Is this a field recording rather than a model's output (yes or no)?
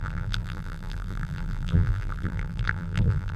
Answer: no